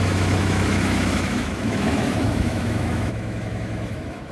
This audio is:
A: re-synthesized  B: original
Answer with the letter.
A